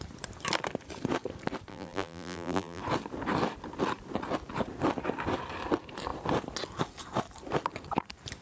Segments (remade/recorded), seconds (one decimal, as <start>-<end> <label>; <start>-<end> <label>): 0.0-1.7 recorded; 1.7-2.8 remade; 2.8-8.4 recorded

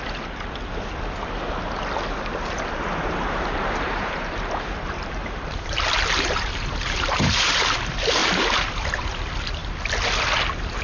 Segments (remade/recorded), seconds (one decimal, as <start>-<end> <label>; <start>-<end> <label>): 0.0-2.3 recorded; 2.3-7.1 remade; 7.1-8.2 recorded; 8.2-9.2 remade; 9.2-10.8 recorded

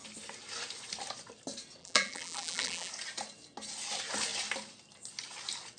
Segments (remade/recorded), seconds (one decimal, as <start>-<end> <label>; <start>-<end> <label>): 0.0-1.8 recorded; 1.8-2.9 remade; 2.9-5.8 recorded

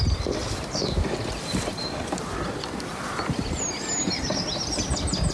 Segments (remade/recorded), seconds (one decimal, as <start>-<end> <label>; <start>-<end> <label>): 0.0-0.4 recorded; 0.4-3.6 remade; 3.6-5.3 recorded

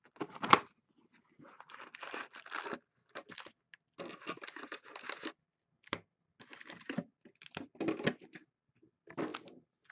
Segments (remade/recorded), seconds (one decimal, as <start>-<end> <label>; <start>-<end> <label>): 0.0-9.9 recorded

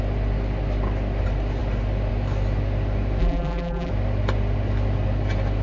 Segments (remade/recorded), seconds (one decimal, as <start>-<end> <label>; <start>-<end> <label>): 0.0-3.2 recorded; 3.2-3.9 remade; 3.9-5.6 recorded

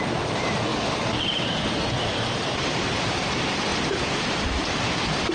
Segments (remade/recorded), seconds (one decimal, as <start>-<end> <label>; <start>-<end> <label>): 0.0-0.7 remade; 0.7-1.4 recorded; 1.4-1.8 remade; 1.8-2.4 recorded; 2.4-3.7 remade; 3.7-4.2 recorded; 4.2-5.3 remade